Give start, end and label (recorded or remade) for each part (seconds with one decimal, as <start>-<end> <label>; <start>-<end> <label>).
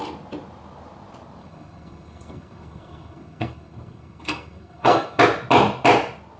0.0-1.4 recorded; 1.4-5.2 remade; 5.2-6.4 recorded